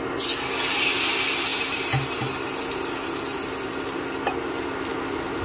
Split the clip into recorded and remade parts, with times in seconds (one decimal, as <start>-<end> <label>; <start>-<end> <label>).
0.0-5.4 recorded